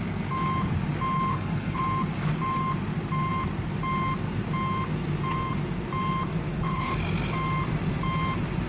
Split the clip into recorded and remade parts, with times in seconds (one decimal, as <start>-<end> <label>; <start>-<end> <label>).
0.0-1.3 recorded; 1.3-1.8 remade; 1.8-6.5 recorded; 6.5-7.0 remade; 7.0-8.7 recorded